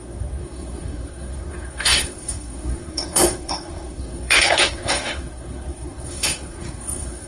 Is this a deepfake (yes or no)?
yes